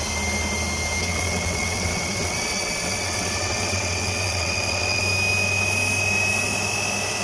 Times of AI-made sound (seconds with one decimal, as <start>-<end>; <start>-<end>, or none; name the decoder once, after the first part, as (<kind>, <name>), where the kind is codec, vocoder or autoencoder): 1.0-5.0 (vocoder, WaveNeXt)